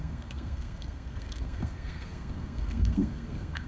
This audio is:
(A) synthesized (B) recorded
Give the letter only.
A